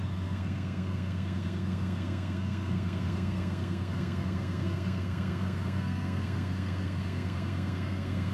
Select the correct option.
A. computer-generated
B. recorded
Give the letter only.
A